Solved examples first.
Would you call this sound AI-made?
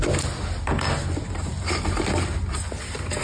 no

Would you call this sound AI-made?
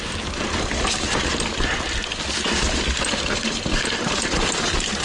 no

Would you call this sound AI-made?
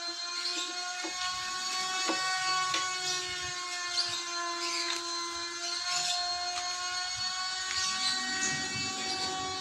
no